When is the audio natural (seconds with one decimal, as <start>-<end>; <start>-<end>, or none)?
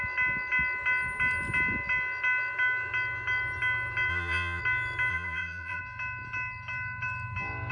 0.0-4.1; 4.6-5.1; 5.8-7.7